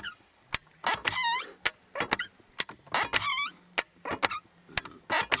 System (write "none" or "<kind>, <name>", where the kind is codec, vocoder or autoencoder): none